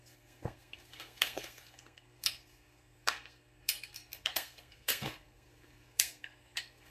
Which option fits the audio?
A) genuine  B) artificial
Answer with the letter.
B